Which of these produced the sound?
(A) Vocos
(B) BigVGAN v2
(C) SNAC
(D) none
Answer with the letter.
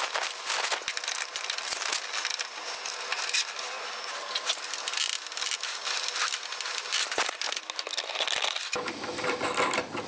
D